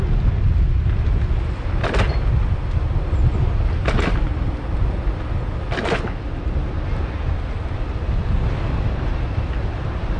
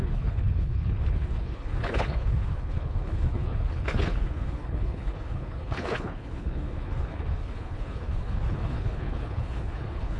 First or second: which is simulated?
second